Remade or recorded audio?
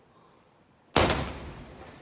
recorded